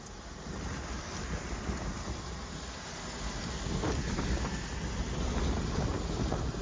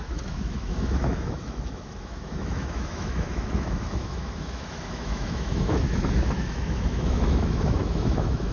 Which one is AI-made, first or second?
second